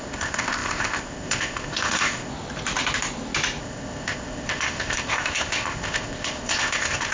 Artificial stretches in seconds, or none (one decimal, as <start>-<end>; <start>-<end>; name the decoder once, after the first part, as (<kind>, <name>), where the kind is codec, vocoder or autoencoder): 0.0-2.3 (codec, ZipCodec); 3.6-7.1